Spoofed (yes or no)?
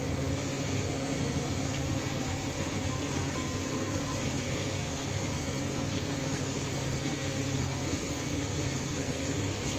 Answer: yes